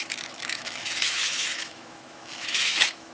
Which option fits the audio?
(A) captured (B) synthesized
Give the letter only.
B